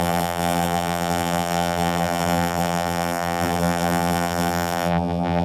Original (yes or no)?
no